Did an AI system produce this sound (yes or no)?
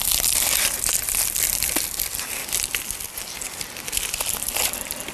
no